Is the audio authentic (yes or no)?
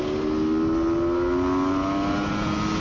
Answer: yes